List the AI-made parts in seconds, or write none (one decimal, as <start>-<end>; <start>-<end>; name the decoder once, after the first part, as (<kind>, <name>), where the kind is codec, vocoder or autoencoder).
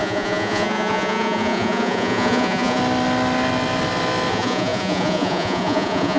0.0-2.8 (vocoder, Vocos); 4.3-6.2